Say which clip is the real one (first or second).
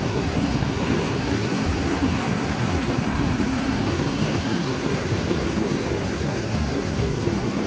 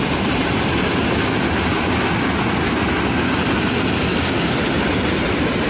second